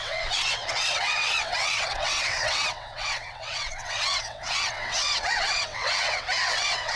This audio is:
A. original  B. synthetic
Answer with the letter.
B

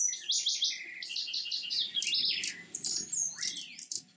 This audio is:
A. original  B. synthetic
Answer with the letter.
A